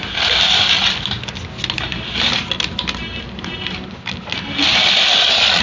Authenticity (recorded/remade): recorded